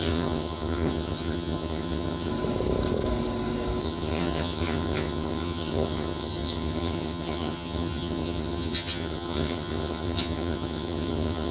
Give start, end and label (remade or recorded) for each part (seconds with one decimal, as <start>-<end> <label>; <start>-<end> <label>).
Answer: 0.0-2.3 remade; 2.3-3.8 recorded; 3.8-11.5 remade